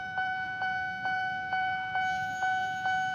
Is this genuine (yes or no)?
no